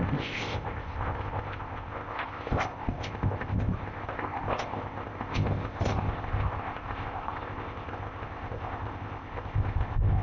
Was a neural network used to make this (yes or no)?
yes